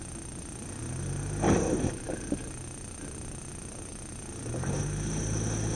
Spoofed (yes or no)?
no